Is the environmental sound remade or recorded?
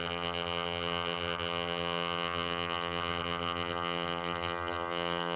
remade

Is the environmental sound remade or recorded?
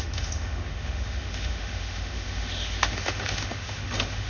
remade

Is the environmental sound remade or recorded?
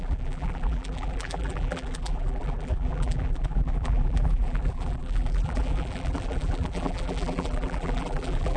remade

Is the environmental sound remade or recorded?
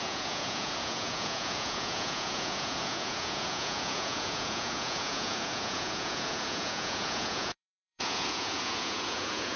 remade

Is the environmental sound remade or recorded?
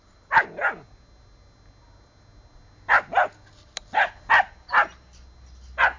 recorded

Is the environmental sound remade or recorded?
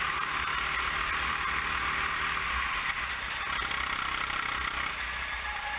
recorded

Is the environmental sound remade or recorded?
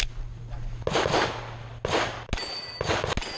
recorded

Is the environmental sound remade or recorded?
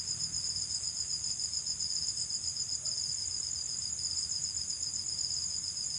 recorded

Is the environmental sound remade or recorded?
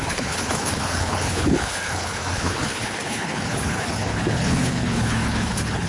remade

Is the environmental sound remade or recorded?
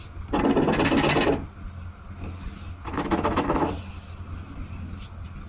recorded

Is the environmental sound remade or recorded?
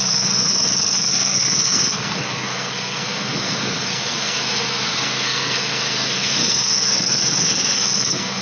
remade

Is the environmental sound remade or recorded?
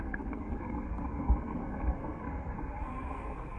remade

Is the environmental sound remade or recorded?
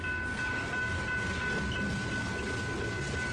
recorded